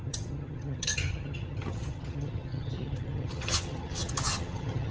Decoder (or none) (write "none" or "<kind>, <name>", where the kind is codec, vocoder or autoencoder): vocoder, HiFi-GAN